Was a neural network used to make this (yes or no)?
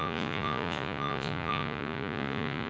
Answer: yes